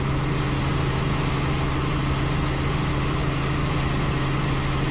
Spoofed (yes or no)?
no